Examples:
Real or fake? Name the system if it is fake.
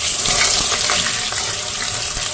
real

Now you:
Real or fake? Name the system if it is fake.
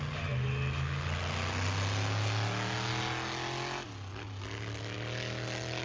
real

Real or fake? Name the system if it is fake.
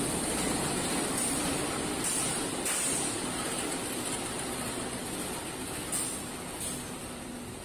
real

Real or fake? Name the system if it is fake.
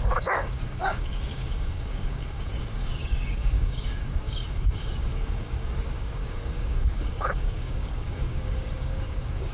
fake, codec, DAC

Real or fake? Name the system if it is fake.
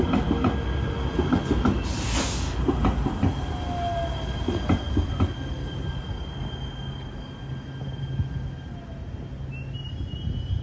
real